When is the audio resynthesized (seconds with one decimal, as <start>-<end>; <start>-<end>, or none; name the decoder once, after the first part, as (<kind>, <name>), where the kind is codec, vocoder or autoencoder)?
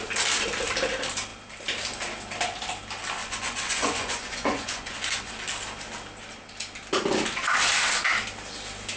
3.2-5.3 (vocoder, Vocos)